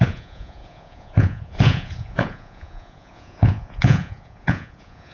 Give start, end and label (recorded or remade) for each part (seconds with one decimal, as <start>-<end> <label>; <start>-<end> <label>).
0.0-5.1 remade